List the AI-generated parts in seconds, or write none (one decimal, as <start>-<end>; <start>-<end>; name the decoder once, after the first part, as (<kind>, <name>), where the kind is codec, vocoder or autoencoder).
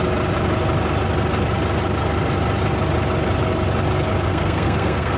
4.3-5.2 (codec, SNAC)